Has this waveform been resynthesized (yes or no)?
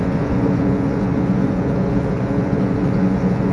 yes